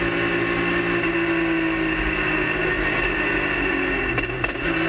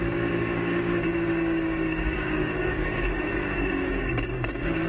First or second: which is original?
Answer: first